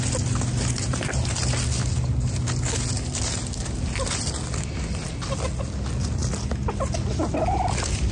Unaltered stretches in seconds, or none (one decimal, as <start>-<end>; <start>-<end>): 0.0-8.1